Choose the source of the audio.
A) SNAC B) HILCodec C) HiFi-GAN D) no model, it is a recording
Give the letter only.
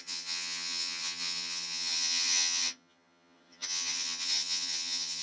C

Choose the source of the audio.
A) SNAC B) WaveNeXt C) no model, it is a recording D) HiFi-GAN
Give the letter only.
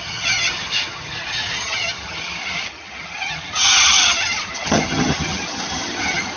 D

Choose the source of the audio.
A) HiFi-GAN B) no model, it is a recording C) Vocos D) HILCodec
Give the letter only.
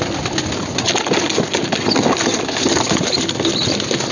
B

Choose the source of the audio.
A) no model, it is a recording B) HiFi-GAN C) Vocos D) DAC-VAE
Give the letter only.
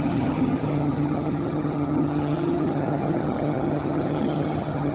B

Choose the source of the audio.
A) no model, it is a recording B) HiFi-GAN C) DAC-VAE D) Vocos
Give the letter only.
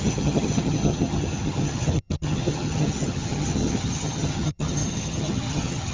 B